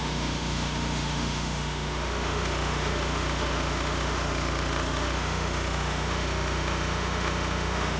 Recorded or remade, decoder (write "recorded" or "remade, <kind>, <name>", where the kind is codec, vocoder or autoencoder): remade, autoencoder, DAC-VAE